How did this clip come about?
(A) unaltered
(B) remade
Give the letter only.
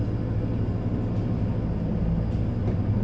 A